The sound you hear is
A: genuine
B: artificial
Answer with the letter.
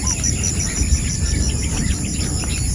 A